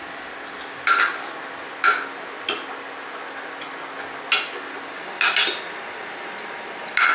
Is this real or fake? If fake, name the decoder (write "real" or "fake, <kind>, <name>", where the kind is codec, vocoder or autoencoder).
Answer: real